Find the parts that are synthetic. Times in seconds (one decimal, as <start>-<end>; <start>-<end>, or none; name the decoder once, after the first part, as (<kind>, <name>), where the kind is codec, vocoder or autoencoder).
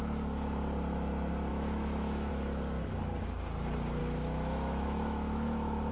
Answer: 1.5-2.3 (autoencoder, DAC-VAE); 4.0-5.9